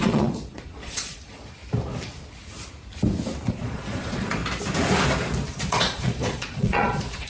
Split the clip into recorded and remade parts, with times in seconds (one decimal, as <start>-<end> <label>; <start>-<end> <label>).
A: 0.0-1.6 remade; 1.6-3.5 recorded; 3.5-4.4 remade; 4.4-5.7 recorded; 5.7-7.3 remade